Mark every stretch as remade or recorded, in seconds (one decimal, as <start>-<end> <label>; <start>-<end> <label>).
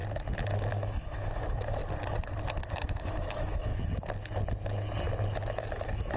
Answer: 0.0-0.7 recorded; 0.7-1.8 remade; 1.8-2.7 recorded; 2.7-3.7 remade; 3.7-5.6 recorded; 5.6-6.2 remade